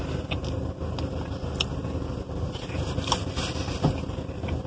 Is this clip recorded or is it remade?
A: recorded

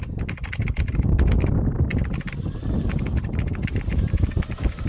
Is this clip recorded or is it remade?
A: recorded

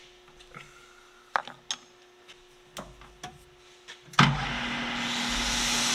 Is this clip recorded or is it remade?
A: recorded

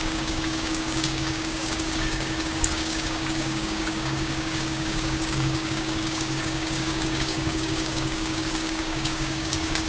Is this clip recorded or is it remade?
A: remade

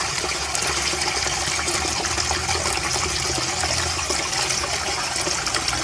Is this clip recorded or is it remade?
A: recorded